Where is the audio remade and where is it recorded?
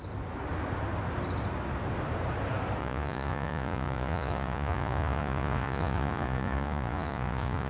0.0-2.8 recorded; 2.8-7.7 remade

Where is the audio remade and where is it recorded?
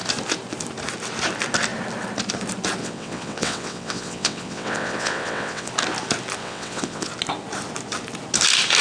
0.0-2.8 recorded; 2.8-5.7 remade; 5.7-6.4 recorded; 6.4-7.1 remade; 7.1-8.8 recorded